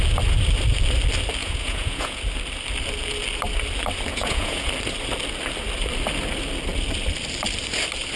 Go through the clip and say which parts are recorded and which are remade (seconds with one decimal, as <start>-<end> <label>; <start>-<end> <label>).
0.0-1.4 recorded; 1.4-2.2 remade; 2.2-4.1 recorded; 4.1-4.7 remade; 4.7-8.2 recorded